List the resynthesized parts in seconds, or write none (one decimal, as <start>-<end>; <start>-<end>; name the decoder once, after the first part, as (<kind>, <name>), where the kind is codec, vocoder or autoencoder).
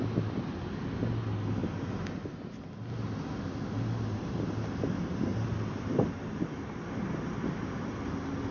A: none